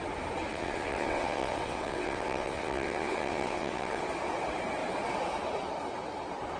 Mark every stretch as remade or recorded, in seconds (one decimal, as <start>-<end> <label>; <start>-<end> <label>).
0.0-0.5 recorded; 0.5-4.0 remade; 4.0-6.6 recorded